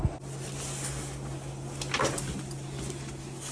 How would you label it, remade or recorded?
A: recorded